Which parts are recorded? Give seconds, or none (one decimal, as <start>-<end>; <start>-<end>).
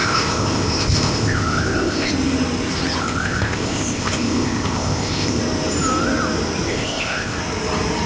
2.1-3.0; 5.4-6.7; 7.4-8.1